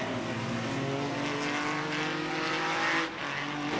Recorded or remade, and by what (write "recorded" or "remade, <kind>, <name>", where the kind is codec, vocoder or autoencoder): recorded